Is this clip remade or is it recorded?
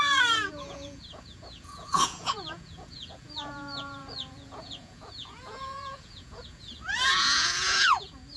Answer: remade